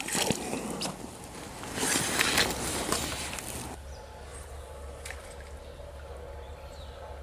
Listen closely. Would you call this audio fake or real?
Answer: real